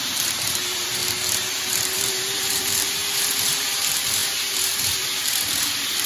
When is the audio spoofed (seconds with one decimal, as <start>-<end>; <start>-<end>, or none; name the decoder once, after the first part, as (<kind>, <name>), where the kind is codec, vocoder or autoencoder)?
0.0-1.0 (vocoder, BigVGAN v2); 1.6-6.1